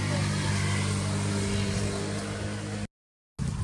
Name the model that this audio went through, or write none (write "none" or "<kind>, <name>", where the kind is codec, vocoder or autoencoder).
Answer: none